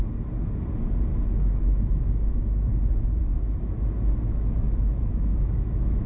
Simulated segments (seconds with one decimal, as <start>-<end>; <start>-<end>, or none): 1.1-1.9; 3.2-6.1